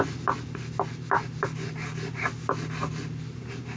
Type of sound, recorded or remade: recorded